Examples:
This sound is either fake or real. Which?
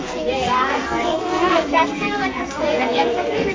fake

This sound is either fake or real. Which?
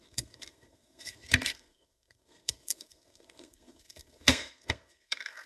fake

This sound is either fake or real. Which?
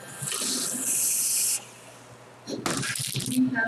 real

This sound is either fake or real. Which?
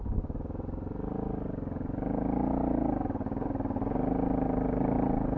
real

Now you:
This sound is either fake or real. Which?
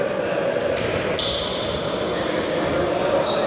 real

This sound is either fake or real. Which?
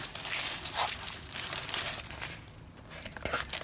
real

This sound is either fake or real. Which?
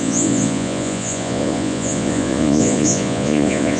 fake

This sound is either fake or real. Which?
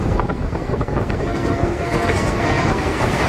fake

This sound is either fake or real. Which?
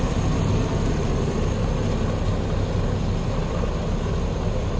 real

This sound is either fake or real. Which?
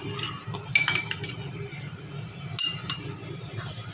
real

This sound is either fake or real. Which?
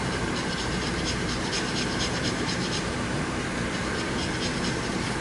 fake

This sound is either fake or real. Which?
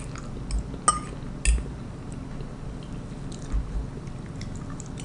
real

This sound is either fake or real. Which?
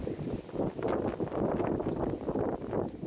real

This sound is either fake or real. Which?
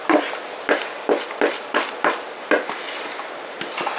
real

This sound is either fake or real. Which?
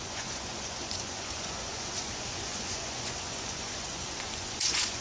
fake